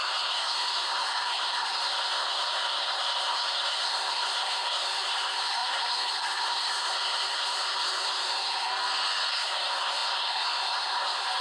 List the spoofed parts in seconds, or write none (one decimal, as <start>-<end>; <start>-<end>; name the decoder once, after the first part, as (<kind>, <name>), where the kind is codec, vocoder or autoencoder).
0.0-8.7 (codec, SNAC); 9.3-11.4